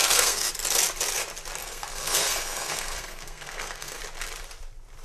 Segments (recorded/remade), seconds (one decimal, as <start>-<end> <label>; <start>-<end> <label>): 0.0-0.5 remade; 0.5-1.6 recorded; 1.6-4.0 remade; 4.0-5.0 recorded